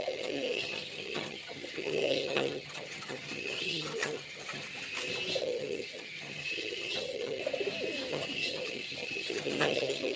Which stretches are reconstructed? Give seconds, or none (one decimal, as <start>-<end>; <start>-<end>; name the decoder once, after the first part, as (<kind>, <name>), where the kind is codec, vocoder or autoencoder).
0.0-4.7 (vocoder, HiFi-GAN); 5.4-7.4; 8.1-10.2